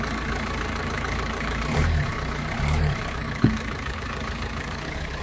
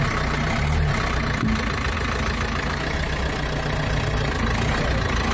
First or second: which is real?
second